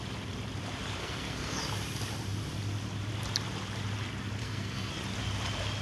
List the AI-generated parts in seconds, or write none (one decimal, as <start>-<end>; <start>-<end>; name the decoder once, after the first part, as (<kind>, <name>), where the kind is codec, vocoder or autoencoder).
1.0-1.6 (codec, SNAC); 4.4-4.9